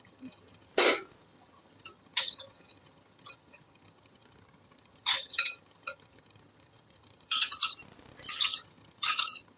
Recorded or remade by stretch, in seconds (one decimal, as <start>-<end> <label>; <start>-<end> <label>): 0.0-0.7 remade; 0.7-1.2 recorded; 1.2-7.8 remade; 7.8-8.3 recorded; 8.3-9.6 remade

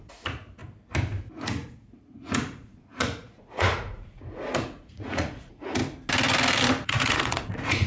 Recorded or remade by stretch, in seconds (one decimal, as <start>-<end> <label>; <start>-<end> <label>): 0.0-0.6 remade; 0.6-1.2 recorded; 1.2-5.8 remade; 5.8-6.9 recorded; 6.9-7.9 remade

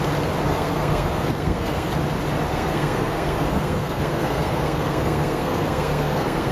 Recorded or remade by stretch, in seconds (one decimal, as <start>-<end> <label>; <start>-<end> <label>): 0.0-0.5 recorded; 0.5-1.9 remade; 1.9-2.5 recorded; 2.5-6.5 remade